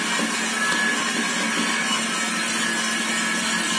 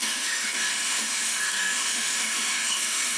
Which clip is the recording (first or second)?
first